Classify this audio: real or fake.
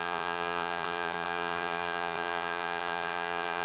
fake